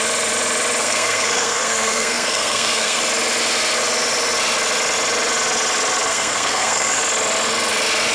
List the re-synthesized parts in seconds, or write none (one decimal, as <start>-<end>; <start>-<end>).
0.8-3.0; 6.1-7.0